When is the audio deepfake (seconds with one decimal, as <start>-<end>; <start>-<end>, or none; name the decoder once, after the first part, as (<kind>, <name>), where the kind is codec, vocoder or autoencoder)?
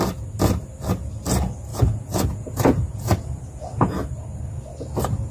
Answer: 1.7-4.1 (vocoder, Vocos)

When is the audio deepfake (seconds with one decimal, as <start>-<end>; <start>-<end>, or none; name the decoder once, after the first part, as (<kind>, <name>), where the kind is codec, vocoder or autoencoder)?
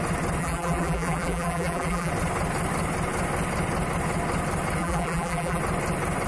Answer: 0.4-2.1 (vocoder, BigVGAN v2); 4.8-5.6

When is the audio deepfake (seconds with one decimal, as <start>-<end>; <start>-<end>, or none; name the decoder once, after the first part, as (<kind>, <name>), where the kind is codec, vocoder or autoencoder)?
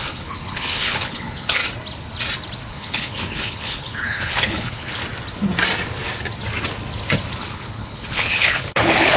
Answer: 0.0-1.6 (codec, HILCodec); 2.7-5.0; 7.4-9.2